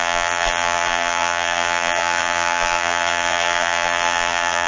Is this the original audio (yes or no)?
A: no